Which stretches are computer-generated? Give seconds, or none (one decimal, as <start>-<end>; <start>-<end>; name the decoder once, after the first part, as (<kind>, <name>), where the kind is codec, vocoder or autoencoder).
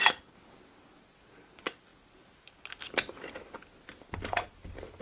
none